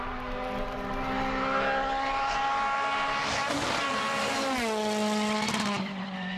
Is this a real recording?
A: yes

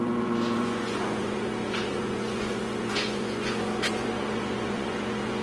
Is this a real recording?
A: no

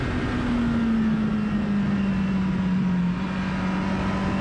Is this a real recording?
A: yes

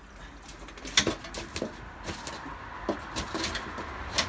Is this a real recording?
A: yes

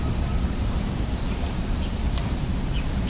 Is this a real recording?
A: no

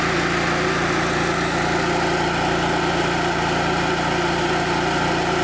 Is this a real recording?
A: yes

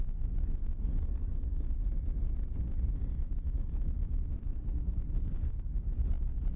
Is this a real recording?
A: yes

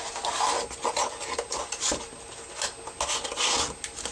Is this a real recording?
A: yes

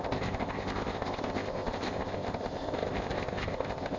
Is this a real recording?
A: no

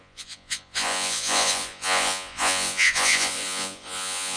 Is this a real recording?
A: no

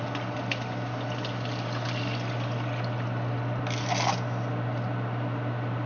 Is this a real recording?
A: yes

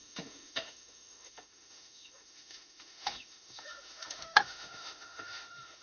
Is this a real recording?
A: no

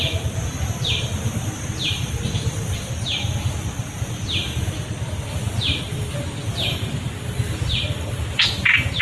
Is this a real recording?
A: no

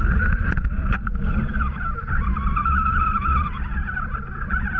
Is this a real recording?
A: no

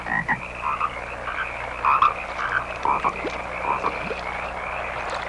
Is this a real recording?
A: yes